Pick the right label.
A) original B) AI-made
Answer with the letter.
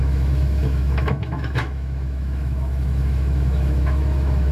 B